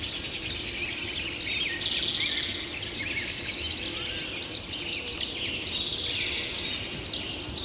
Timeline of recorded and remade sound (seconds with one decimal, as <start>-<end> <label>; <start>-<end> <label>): 0.0-7.6 recorded